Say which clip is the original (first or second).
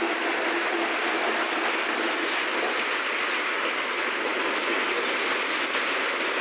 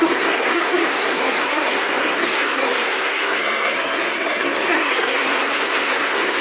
first